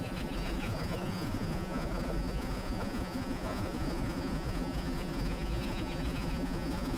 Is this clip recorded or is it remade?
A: remade